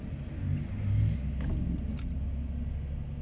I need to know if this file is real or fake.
real